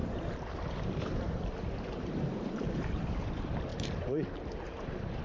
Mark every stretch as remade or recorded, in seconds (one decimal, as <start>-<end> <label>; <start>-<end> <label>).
0.0-3.1 remade; 3.1-3.7 recorded; 3.7-4.4 remade; 4.4-5.2 recorded